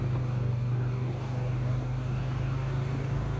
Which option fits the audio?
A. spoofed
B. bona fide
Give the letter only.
A